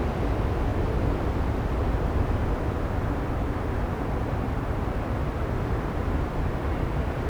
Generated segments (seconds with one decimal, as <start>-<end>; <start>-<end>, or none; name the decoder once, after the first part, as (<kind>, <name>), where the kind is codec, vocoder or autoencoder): 0.0-0.7 (vocoder, BigVGAN v2); 3.4-7.3